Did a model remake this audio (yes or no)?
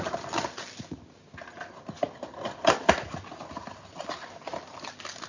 no